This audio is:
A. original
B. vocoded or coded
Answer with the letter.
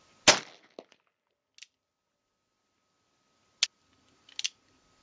A